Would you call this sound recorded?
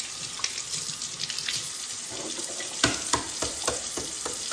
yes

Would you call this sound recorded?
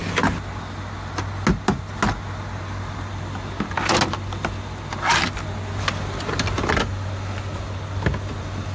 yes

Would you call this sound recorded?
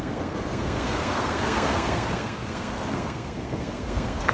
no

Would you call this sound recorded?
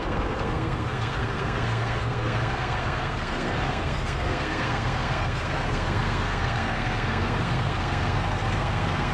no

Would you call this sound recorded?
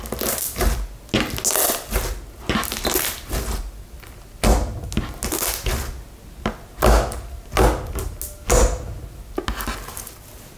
yes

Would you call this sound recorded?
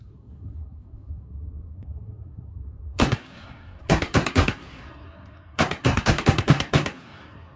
no